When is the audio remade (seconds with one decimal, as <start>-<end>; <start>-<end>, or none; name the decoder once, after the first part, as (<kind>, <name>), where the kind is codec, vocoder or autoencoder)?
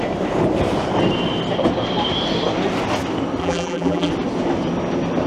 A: 3.4-4.1 (vocoder, BigVGAN v2)